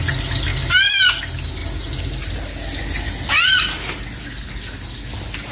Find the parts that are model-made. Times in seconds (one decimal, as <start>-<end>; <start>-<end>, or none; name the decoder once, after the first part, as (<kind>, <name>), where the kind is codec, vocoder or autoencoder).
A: none